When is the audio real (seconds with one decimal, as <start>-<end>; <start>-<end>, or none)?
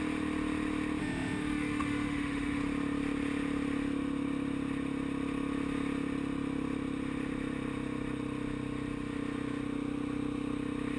0.0-1.0; 2.6-11.0